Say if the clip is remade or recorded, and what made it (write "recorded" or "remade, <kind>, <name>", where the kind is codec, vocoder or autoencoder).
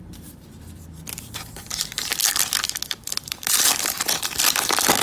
remade, vocoder, BigVGAN v2